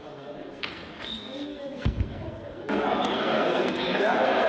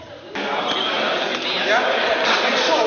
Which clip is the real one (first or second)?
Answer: second